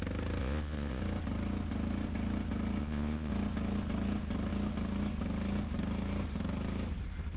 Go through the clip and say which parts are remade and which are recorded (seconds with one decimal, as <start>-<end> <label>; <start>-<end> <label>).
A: 0.0-0.4 recorded; 0.4-1.0 remade; 1.0-2.8 recorded; 2.8-3.3 remade; 3.3-7.4 recorded